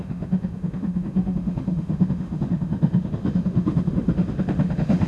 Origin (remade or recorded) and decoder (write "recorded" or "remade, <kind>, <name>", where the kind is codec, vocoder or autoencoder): remade, autoencoder, DAC-VAE